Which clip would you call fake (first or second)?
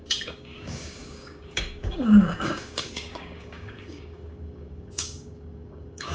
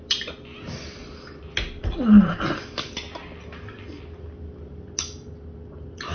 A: first